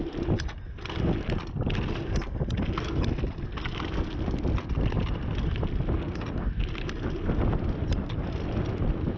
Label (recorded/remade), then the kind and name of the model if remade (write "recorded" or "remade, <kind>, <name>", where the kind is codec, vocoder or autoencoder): recorded